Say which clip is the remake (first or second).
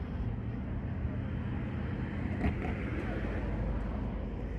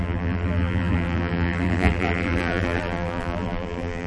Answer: second